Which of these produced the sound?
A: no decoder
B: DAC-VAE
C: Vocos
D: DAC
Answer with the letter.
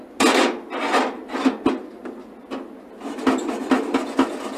A